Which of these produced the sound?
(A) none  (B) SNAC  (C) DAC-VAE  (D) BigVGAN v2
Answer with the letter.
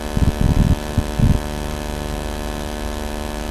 D